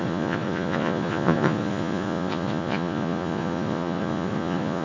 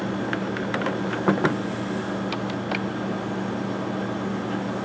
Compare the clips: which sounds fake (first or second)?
first